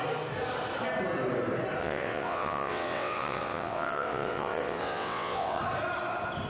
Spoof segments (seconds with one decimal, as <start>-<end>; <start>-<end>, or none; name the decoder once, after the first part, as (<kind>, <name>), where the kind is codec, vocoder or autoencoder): 1.8-5.6 (vocoder, WaveNeXt)